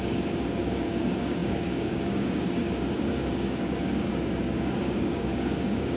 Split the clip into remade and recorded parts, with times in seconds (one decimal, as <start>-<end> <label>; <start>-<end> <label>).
0.0-6.0 remade

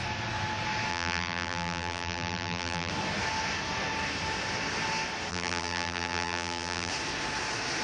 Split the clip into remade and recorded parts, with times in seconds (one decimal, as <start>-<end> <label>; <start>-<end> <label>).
0.0-0.9 recorded; 0.9-2.9 remade; 2.9-5.3 recorded; 5.3-6.9 remade; 6.9-7.8 recorded

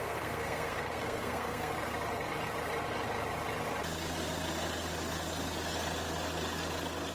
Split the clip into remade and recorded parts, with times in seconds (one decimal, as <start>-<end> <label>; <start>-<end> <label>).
0.0-1.7 remade; 1.7-7.1 recorded

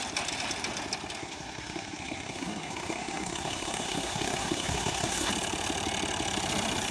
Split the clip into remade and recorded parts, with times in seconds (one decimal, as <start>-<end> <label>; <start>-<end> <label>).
0.0-1.2 recorded; 1.2-5.3 remade; 5.3-6.9 recorded

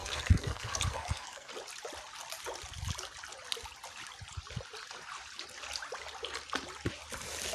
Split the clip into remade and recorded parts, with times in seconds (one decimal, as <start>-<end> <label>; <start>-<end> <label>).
0.0-1.5 remade; 1.5-7.5 recorded

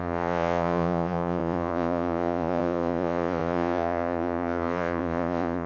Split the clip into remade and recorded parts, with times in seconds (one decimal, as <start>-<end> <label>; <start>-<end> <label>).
0.0-5.7 remade

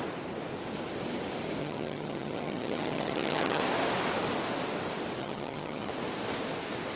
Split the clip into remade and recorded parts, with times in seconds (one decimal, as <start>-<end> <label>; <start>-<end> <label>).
0.0-1.6 recorded; 1.6-3.6 remade; 3.6-5.2 recorded; 5.2-5.9 remade; 5.9-7.0 recorded

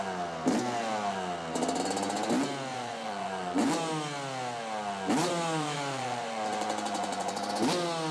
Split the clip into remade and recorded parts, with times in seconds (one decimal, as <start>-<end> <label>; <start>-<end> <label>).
0.0-2.7 recorded; 2.7-3.7 remade; 3.7-5.2 recorded; 5.2-7.5 remade; 7.5-8.1 recorded